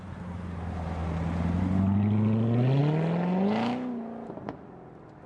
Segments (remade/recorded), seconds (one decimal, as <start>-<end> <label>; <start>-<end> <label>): 0.0-5.3 recorded